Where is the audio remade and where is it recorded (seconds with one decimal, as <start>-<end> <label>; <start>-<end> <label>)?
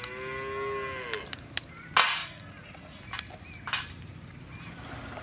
0.0-2.2 recorded; 2.2-3.0 remade; 3.0-5.2 recorded